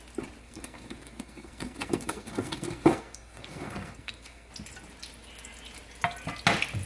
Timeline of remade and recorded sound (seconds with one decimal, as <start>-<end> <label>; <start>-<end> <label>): 0.0-0.4 recorded; 0.4-4.5 remade; 4.5-6.9 recorded